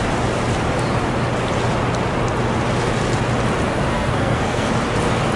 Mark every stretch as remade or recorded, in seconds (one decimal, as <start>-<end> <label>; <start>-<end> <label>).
0.0-3.9 recorded; 3.9-4.7 remade; 4.7-5.4 recorded